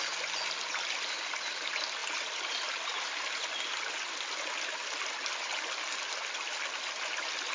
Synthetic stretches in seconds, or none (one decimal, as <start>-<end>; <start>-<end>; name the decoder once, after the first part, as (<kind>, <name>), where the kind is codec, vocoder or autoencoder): none